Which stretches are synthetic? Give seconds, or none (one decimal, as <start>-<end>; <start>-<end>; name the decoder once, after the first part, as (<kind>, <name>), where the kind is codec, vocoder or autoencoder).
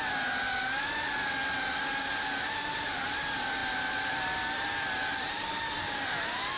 none